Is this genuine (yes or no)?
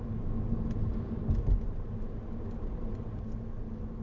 yes